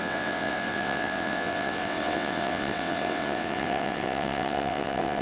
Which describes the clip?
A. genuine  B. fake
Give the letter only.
B